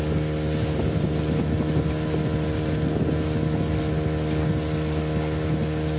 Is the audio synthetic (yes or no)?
no